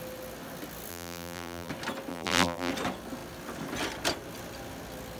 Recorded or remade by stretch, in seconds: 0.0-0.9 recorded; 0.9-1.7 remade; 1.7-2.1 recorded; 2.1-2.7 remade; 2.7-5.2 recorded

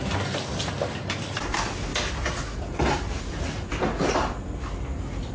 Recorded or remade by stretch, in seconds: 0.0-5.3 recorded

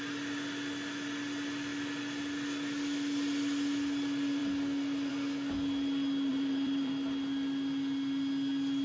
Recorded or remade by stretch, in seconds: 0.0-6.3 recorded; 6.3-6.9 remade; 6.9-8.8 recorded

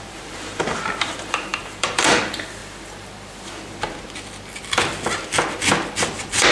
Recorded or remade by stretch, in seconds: 0.0-2.6 remade; 2.6-6.5 recorded

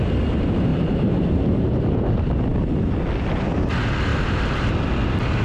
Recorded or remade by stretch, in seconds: 0.0-0.7 recorded; 0.7-2.1 remade; 2.1-4.1 recorded; 4.1-4.7 remade; 4.7-5.4 recorded

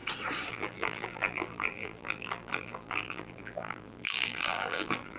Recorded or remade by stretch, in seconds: 0.0-0.5 recorded; 0.5-5.2 remade

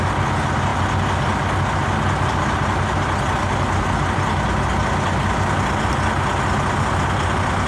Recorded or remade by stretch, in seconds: 0.0-7.7 recorded